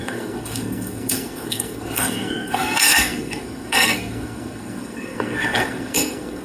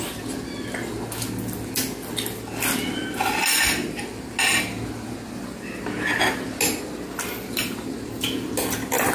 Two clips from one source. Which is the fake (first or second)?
first